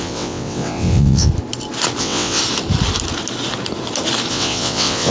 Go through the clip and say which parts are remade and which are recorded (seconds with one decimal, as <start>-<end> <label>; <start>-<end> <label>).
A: 0.0-1.3 remade; 1.3-2.0 recorded; 2.0-2.4 remade; 2.4-4.3 recorded; 4.3-5.1 remade